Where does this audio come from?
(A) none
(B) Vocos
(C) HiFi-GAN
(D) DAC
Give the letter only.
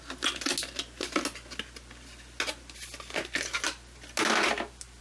A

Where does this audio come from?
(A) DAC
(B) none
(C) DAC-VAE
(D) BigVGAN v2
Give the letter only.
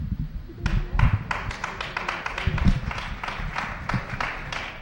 B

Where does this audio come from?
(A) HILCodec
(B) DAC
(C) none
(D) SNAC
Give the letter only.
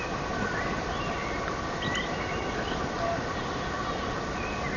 C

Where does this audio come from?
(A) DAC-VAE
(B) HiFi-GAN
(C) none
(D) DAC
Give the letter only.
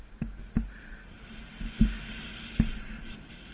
C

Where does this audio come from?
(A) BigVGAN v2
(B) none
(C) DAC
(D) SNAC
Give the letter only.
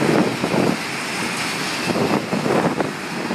B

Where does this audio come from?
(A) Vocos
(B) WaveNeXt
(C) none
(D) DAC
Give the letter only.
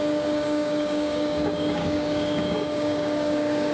D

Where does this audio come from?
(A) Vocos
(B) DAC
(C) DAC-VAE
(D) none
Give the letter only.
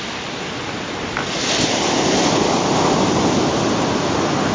D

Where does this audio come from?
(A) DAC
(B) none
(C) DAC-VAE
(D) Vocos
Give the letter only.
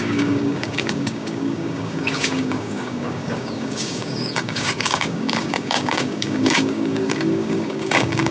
A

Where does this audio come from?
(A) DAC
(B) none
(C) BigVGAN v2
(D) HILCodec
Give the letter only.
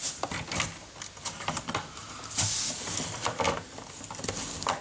B